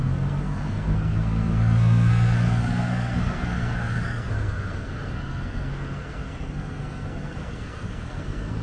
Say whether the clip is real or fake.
fake